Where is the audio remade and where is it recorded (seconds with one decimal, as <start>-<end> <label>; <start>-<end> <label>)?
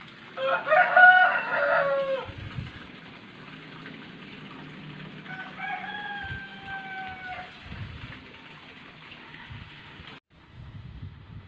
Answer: 0.0-9.2 recorded; 9.2-10.0 remade; 10.0-10.4 recorded; 10.4-11.5 remade